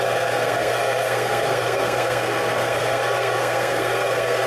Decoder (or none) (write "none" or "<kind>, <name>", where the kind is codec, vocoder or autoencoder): codec, SNAC